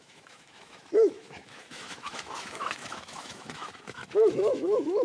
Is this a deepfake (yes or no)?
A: yes